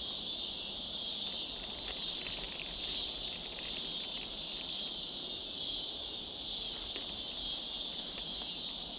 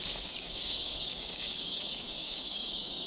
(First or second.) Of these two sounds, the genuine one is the first